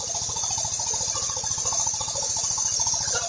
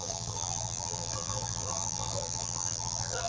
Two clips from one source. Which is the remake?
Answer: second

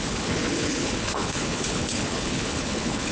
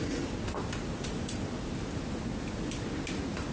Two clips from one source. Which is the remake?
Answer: first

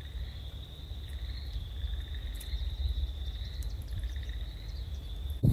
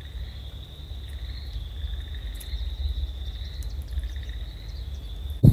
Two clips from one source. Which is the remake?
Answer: first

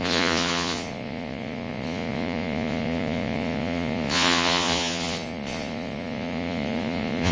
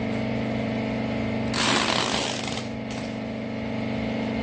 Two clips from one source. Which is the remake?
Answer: first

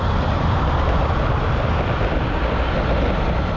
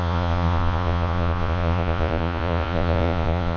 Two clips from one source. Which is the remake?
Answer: second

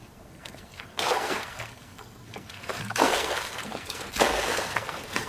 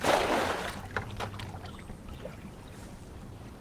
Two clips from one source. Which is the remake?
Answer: first